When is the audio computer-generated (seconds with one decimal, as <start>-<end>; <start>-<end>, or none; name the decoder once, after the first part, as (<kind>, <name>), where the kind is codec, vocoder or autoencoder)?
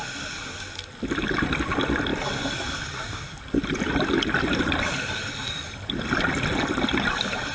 2.1-5.9 (vocoder, BigVGAN v2)